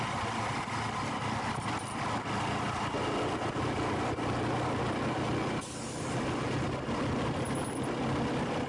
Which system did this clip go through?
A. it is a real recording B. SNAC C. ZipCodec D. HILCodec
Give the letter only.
A